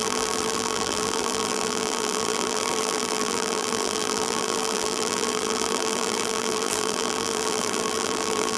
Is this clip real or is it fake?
fake